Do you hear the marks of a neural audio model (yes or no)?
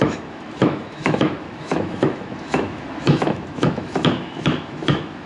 yes